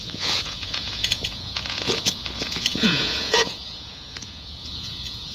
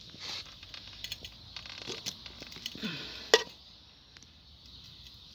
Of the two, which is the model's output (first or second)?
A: first